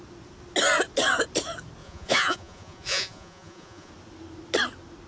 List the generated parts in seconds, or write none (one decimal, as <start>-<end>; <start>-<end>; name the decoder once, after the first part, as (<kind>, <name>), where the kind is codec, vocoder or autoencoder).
1.8-3.9 (vocoder, Vocos)